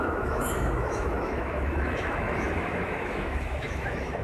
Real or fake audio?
fake